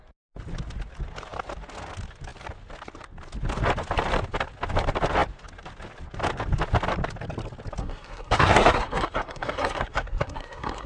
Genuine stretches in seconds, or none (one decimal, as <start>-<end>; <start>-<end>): 0.0-7.8